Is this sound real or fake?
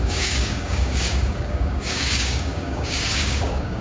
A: fake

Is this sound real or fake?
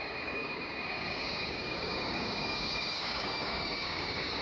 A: fake